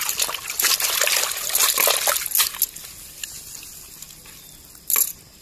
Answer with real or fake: real